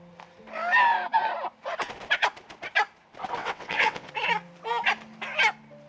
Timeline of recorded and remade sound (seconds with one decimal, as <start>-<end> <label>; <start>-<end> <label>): 0.0-3.4 recorded; 3.4-4.1 remade; 4.1-5.9 recorded